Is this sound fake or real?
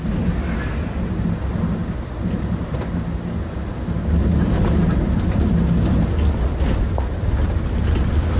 real